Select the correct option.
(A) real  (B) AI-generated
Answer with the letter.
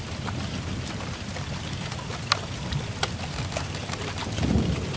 A